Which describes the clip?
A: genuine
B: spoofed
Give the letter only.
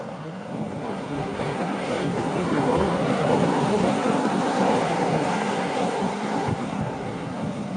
B